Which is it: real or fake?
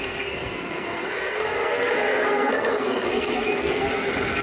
fake